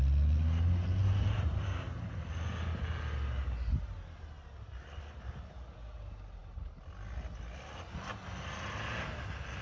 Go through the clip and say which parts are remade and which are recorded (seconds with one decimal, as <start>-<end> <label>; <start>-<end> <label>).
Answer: 0.0-9.6 recorded